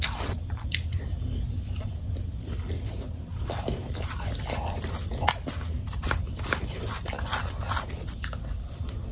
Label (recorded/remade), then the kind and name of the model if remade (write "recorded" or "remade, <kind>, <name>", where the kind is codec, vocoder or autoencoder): recorded